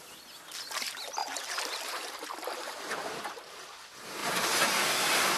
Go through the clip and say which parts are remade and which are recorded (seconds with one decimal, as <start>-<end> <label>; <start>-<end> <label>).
0.0-1.2 recorded; 1.2-3.5 remade; 3.5-4.2 recorded; 4.2-4.8 remade; 4.8-5.4 recorded